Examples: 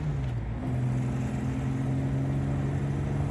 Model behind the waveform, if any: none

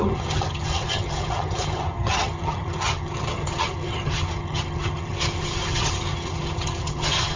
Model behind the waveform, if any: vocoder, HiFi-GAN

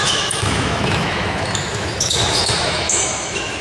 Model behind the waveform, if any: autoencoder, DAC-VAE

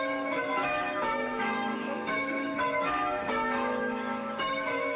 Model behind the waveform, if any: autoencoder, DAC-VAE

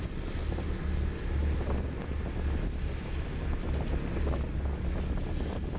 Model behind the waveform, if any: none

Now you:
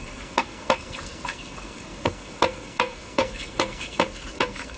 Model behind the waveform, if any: codec, SNAC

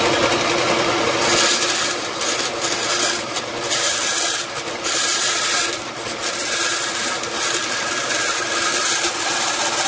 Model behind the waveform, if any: vocoder, BigVGAN v2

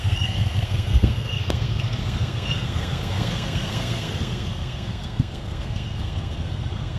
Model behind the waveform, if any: codec, SNAC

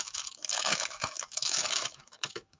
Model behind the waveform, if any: autoencoder, DAC-VAE